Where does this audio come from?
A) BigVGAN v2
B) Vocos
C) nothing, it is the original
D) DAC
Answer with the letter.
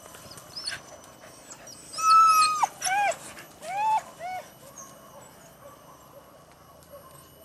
C